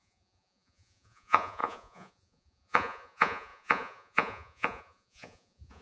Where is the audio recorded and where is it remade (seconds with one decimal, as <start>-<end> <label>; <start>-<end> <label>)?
0.0-5.8 remade